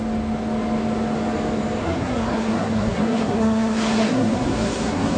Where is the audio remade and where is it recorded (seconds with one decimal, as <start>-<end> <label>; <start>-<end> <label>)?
0.0-1.8 recorded; 1.8-5.2 remade